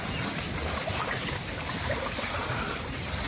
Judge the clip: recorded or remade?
remade